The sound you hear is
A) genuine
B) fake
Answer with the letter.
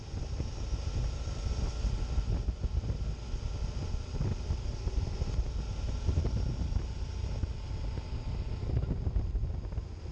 A